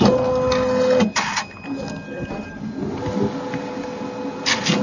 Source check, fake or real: real